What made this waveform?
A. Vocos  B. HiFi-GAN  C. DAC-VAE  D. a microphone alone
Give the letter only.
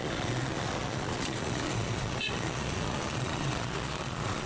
A